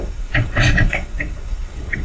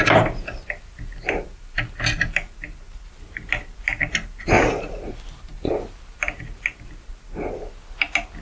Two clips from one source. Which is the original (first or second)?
second